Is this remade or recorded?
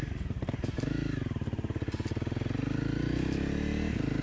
recorded